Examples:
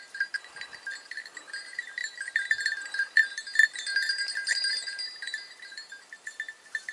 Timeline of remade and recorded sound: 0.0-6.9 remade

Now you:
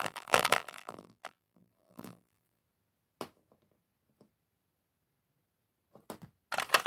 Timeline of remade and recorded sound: 0.0-2.6 remade; 2.6-6.9 recorded

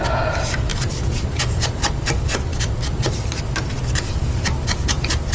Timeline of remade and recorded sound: 0.0-0.7 recorded; 0.7-1.9 remade; 1.9-2.5 recorded; 2.5-3.4 remade; 3.4-5.3 recorded

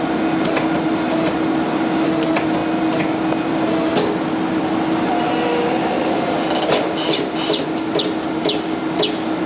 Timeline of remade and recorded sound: 0.0-9.5 recorded

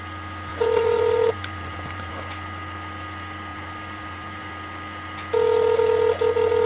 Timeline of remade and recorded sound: 0.0-0.5 recorded; 0.5-2.1 remade; 2.1-3.5 recorded; 3.5-4.5 remade; 4.5-6.7 recorded